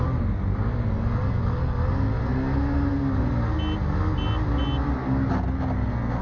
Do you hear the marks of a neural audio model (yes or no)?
no